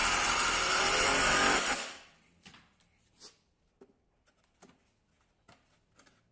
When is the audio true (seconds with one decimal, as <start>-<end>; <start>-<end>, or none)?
0.0-0.8